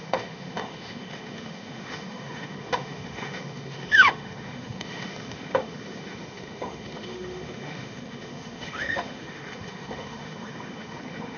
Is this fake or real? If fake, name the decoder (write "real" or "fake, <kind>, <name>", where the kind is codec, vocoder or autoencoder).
fake, autoencoder, DAC-VAE